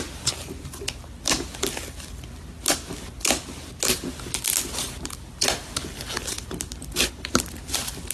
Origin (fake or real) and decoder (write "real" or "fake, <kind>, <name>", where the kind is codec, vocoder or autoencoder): real